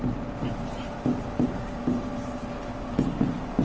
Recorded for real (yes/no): yes